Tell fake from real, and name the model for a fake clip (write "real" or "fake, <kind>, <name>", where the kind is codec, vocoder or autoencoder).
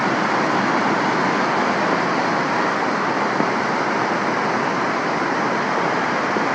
real